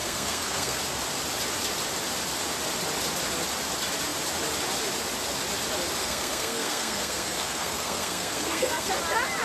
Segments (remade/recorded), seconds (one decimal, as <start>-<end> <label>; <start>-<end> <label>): 0.0-0.8 remade; 0.8-6.0 recorded; 6.0-8.9 remade; 8.9-9.4 recorded